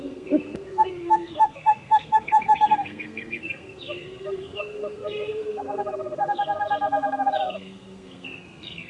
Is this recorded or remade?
remade